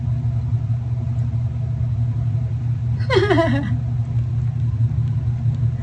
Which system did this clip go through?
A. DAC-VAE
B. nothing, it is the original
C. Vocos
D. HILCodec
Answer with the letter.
B